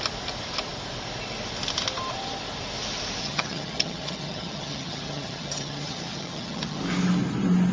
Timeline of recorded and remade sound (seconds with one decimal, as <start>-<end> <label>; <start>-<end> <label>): 0.0-3.2 recorded; 3.2-6.8 remade; 6.8-7.7 recorded